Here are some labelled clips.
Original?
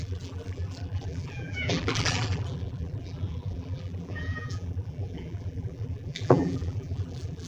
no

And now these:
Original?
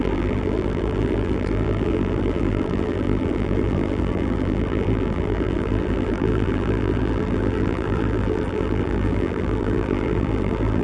no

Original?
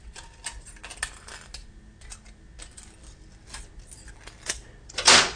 yes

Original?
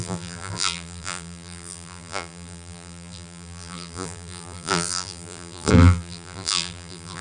no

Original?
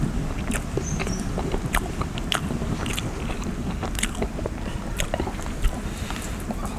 yes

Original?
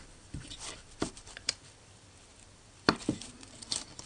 no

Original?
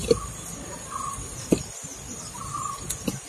yes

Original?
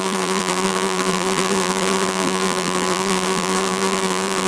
no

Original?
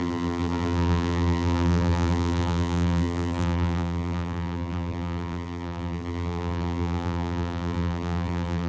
no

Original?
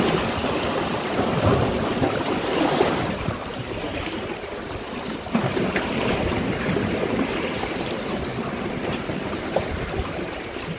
no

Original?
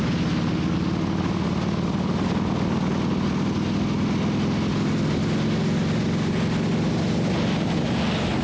yes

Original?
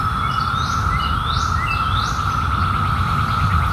yes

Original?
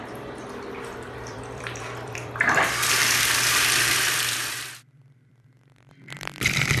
no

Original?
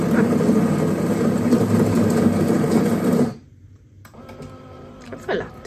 no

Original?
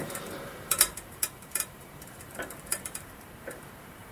no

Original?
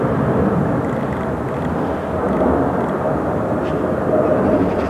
no